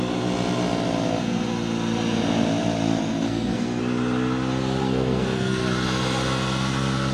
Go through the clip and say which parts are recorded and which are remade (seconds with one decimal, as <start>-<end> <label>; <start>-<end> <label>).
0.0-3.1 recorded; 3.1-3.8 remade; 3.8-4.8 recorded; 4.8-5.6 remade; 5.6-7.1 recorded